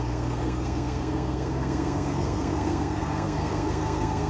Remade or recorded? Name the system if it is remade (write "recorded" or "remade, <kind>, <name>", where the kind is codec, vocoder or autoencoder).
remade, codec, SNAC